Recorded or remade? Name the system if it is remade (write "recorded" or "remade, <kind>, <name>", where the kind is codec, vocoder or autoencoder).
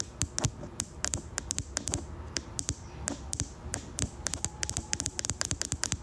recorded